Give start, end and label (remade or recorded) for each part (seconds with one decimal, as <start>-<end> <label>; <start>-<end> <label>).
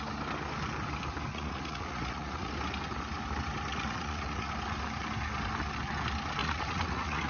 0.0-1.3 recorded; 1.3-2.5 remade; 2.5-3.7 recorded; 3.7-4.5 remade; 4.5-6.4 recorded; 6.4-7.3 remade